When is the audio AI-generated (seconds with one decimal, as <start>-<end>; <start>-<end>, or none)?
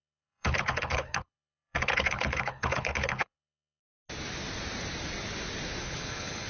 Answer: 0.0-3.8; 5.8-6.5